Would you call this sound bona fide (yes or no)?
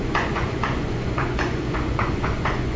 no